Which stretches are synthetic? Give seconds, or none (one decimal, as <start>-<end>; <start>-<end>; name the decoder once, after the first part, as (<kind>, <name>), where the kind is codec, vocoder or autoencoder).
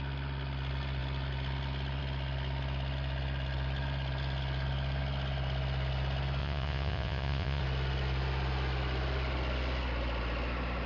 6.4-7.6 (vocoder, Vocos)